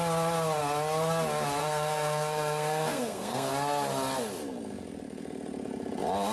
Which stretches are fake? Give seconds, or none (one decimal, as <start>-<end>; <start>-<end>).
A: 1.6-3.5